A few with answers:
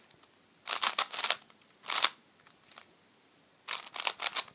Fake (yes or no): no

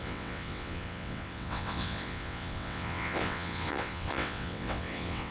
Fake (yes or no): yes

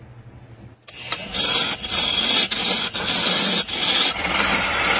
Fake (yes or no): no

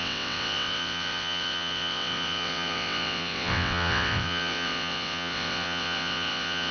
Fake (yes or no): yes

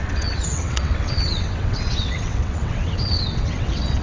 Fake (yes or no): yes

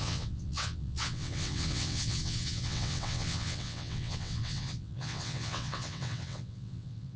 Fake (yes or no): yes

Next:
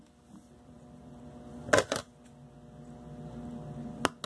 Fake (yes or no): no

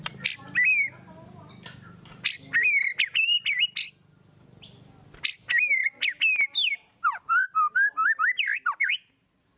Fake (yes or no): no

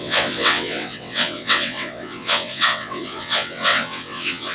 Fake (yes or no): yes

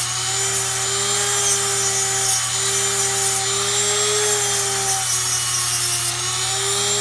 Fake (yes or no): no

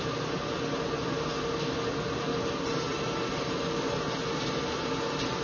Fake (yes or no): no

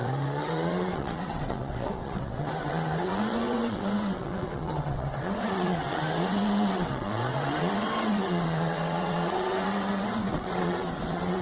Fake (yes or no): yes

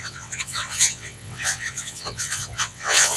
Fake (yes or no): yes